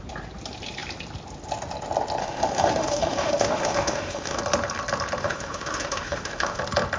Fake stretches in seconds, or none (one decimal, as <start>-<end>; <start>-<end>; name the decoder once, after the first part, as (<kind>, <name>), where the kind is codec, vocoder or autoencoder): 2.2-4.4 (autoencoder, DAC-VAE); 5.2-6.6